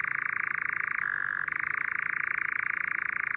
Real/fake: real